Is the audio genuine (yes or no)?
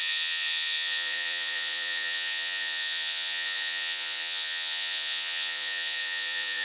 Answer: no